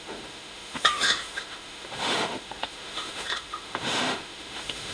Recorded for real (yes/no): no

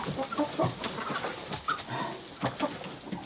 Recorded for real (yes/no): yes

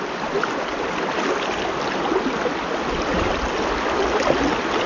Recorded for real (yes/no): yes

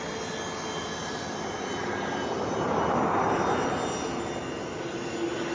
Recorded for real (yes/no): yes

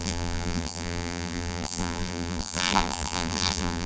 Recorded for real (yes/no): no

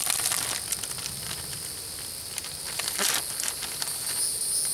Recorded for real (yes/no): yes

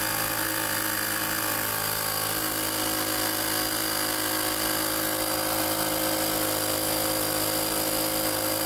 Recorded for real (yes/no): yes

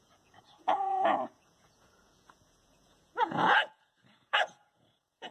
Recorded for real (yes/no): no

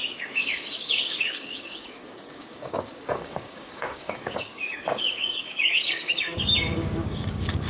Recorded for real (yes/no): no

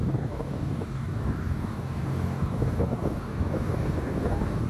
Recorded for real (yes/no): no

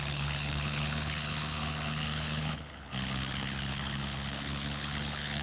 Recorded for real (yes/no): no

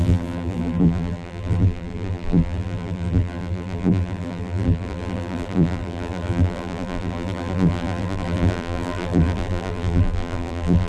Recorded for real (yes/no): no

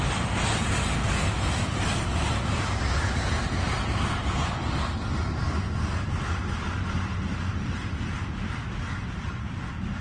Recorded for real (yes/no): yes